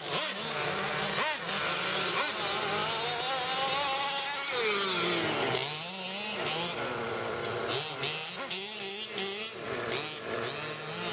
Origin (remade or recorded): recorded